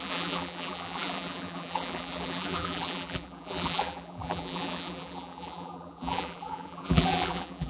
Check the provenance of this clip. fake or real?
fake